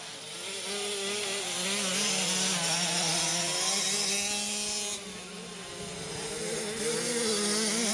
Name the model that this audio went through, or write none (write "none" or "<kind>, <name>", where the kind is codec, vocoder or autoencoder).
none